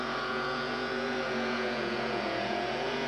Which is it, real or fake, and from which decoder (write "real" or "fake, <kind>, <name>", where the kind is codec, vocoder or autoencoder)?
fake, vocoder, Vocos